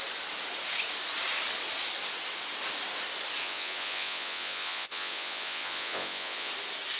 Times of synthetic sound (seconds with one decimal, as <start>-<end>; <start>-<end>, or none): 3.4-6.5